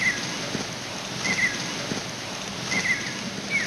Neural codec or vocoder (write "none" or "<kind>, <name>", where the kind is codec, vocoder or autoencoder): none